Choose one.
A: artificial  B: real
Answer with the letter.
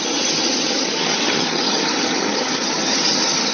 A